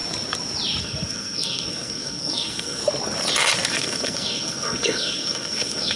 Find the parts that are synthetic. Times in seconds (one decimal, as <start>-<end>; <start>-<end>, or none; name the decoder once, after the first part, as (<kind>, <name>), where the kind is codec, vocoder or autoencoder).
0.8-2.8 (codec, SNAC); 3.7-6.0